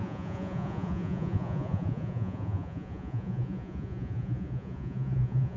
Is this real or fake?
fake